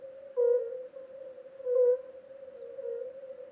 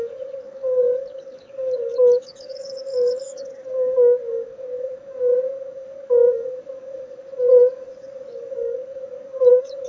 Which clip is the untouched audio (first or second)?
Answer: first